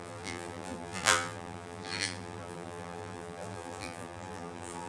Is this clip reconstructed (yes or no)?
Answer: yes